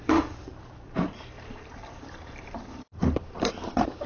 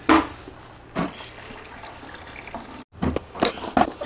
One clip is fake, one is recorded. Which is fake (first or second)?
first